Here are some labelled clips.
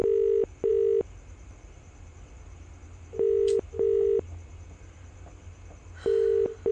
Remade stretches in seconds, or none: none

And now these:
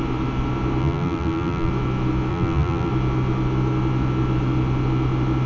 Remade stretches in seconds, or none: 0.8-1.7 (vocoder, BigVGAN v2); 2.3-2.9